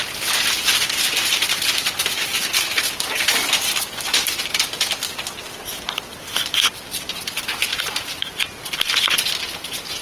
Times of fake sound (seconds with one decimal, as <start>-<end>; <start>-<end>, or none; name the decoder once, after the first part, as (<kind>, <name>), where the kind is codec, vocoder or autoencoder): 2.0-2.8 (vocoder, BigVGAN v2); 7.7-8.3